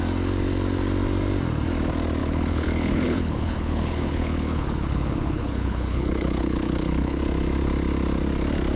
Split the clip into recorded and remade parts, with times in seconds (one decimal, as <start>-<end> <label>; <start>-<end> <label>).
0.0-2.2 recorded; 2.2-7.2 remade; 7.2-8.8 recorded